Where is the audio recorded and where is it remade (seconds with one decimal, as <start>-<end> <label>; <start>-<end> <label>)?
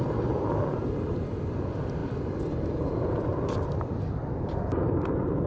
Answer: 0.0-5.5 remade